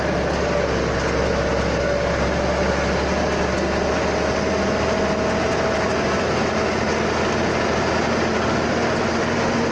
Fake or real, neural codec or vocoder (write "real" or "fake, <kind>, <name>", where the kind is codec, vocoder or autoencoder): real